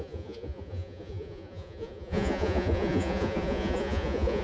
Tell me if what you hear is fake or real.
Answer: fake